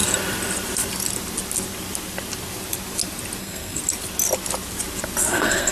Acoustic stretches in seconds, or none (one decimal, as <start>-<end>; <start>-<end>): 0.0-3.4; 3.8-5.3